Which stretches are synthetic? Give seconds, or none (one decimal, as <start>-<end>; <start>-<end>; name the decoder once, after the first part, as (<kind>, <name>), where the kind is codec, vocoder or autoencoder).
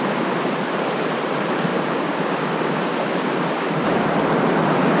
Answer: 1.7-2.8 (codec, DAC)